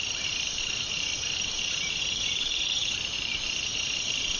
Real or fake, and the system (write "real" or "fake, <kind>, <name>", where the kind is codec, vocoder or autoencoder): fake, vocoder, BigVGAN v2